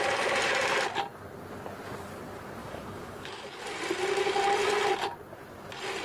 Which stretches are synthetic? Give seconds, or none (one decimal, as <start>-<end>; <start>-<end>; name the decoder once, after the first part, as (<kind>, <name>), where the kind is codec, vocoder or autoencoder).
2.6-3.6 (codec, DAC)